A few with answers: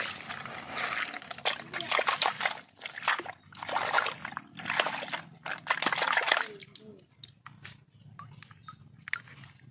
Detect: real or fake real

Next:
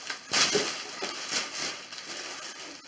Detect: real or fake real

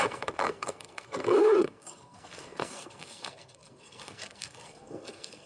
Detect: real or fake fake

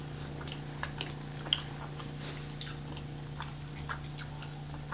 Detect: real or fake real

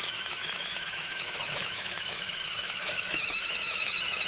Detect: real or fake fake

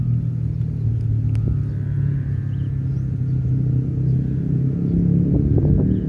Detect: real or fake real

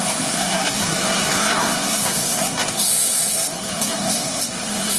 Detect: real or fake fake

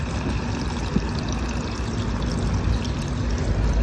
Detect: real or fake real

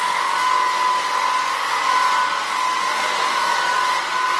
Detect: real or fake real